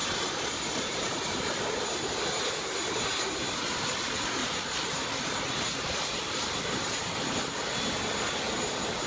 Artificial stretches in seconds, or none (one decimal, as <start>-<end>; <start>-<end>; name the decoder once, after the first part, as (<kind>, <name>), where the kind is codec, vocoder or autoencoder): 4.0-4.4 (vocoder, Vocos)